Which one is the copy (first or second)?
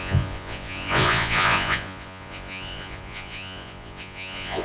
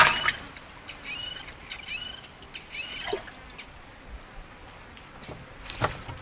first